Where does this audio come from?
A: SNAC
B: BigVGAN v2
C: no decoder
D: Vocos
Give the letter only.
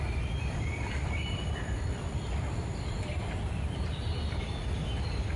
B